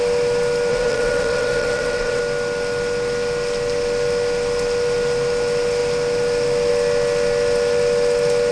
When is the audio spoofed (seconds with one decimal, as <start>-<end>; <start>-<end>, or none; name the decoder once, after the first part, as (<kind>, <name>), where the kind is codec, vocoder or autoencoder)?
0.7-2.2 (vocoder, WaveNeXt)